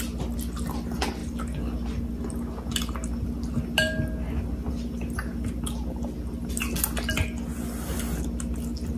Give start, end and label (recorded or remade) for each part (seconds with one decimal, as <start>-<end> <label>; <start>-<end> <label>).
0.0-9.0 recorded